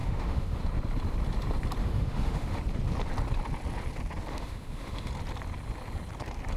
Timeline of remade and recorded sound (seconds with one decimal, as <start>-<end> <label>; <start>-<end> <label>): 0.0-0.6 remade; 0.6-1.8 recorded; 1.8-2.6 remade; 2.6-4.3 recorded; 4.3-5.1 remade; 5.1-6.6 recorded